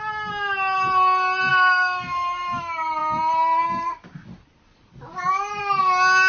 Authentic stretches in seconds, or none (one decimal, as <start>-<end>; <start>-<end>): 0.0-1.5; 2.6-6.3